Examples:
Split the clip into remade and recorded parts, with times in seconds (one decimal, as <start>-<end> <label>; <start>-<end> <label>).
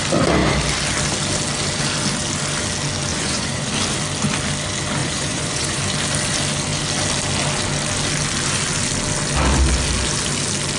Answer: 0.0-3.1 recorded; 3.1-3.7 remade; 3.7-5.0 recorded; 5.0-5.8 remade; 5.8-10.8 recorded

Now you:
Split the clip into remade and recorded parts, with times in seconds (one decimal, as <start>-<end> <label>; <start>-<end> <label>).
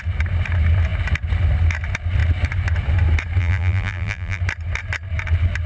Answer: 0.0-3.4 recorded; 3.4-4.4 remade; 4.4-5.7 recorded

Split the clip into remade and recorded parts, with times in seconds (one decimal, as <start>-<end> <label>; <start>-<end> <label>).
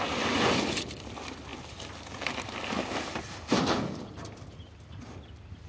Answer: 0.0-5.7 recorded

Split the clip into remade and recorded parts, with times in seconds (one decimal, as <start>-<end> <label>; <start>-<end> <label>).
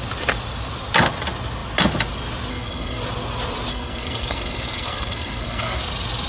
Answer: 0.0-2.5 recorded; 2.5-3.0 remade; 3.0-3.7 recorded; 3.7-5.8 remade; 5.8-6.3 recorded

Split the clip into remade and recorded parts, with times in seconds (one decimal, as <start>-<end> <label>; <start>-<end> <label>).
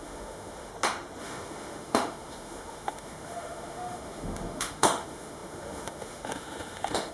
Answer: 0.0-0.7 remade; 0.7-1.2 recorded; 1.2-7.1 remade